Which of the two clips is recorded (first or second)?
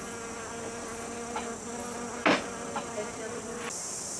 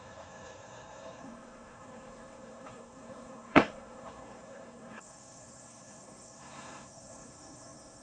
first